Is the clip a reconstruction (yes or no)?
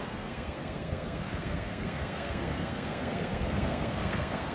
yes